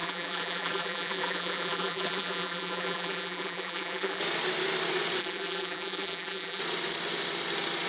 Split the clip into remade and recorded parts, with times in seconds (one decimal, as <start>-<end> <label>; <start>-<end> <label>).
0.0-4.2 remade; 4.2-5.2 recorded; 5.2-6.6 remade; 6.6-7.9 recorded